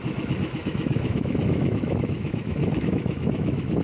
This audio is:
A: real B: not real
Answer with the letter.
B